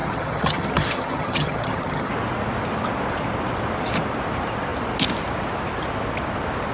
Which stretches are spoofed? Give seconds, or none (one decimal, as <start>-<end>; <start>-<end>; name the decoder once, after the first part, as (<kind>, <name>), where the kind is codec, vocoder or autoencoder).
0.0-2.1 (vocoder, HiFi-GAN)